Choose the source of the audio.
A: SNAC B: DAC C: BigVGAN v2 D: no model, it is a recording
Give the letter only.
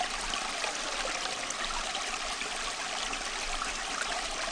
D